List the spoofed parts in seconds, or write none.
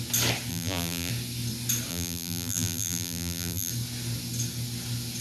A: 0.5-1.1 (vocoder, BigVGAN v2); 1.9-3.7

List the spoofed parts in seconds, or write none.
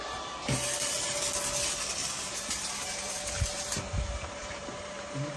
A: 2.0-5.4 (vocoder, BigVGAN v2)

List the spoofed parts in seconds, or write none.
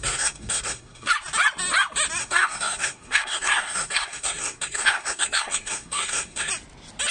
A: 0.0-1.1 (codec, SNAC); 2.2-6.5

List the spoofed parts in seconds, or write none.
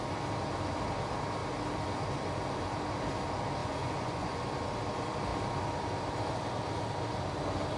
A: 3.6-4.4 (vocoder, Vocos)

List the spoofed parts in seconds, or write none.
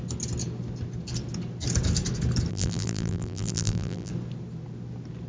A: 2.5-4.1 (vocoder, BigVGAN v2)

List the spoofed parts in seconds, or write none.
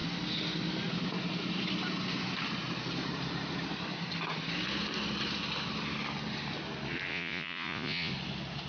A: 7.1-8.1 (vocoder, Vocos)